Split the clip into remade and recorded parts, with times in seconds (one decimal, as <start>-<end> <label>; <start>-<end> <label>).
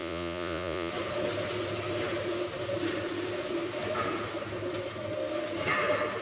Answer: 0.0-0.9 remade; 0.9-6.2 recorded